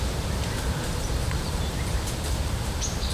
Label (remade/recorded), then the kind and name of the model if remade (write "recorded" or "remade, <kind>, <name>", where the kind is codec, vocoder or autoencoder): remade, vocoder, BigVGAN v2